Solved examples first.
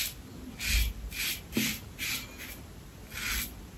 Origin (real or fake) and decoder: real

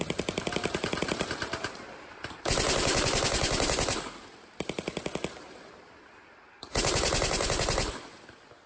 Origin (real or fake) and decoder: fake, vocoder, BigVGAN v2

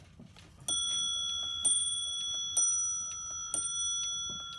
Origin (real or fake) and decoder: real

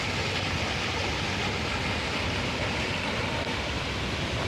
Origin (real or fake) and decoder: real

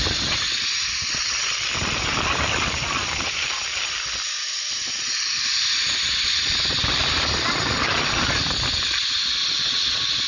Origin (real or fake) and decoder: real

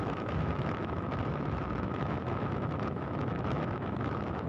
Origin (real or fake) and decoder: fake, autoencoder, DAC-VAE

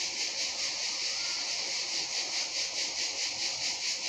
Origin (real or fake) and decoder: real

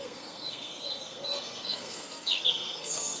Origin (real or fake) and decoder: fake, codec, SNAC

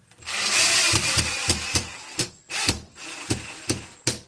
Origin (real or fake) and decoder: fake, vocoder, BigVGAN v2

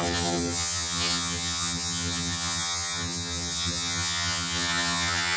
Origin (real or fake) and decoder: fake, vocoder, HiFi-GAN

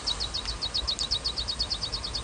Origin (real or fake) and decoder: real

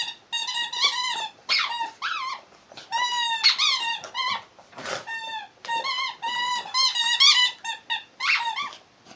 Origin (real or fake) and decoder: real